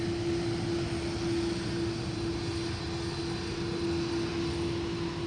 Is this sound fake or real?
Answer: real